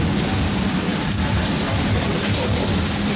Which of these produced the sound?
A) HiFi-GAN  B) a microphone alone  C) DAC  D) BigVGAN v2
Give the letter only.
B